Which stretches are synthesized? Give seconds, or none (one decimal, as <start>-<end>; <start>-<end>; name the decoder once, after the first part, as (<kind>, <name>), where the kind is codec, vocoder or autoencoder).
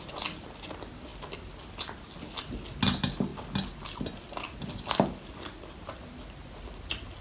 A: none